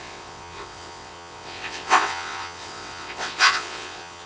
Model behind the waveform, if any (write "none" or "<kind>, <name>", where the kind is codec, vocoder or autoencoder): vocoder, WaveNeXt